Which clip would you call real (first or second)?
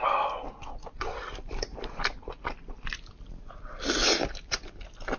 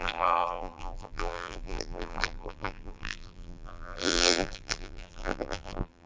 first